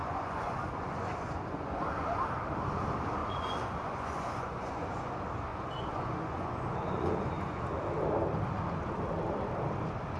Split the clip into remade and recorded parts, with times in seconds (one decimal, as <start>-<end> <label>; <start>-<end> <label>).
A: 0.0-1.8 remade; 1.8-3.2 recorded; 3.2-5.1 remade; 5.1-5.5 recorded; 5.5-7.6 remade; 7.6-10.2 recorded